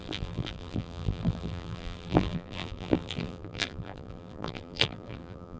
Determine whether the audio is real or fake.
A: fake